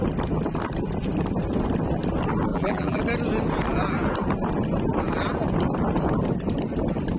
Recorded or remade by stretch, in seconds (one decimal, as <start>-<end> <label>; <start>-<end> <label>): 0.0-2.5 recorded; 2.5-3.0 remade; 3.0-7.2 recorded